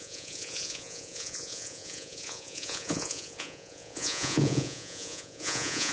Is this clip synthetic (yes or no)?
yes